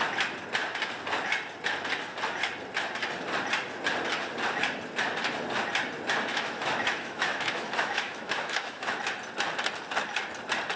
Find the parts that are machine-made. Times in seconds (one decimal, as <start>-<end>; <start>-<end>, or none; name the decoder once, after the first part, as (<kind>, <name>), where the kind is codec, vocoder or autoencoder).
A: 6.3-9.0 (autoencoder, DAC-VAE)